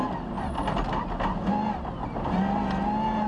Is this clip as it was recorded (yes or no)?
yes